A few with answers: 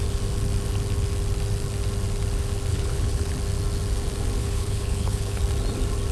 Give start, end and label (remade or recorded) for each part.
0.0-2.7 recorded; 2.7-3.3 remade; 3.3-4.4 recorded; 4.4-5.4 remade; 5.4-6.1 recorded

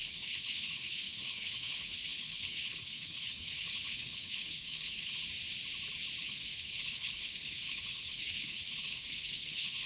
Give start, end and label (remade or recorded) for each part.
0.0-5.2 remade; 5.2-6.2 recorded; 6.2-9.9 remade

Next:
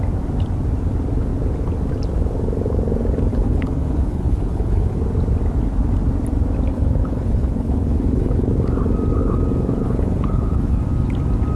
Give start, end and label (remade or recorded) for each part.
0.0-3.3 recorded; 3.3-5.0 remade; 5.0-6.7 recorded; 6.7-8.5 remade; 8.5-9.8 recorded; 9.8-10.8 remade; 10.8-11.6 recorded

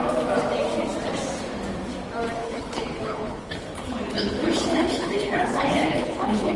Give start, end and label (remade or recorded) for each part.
0.0-2.4 recorded; 2.4-6.6 remade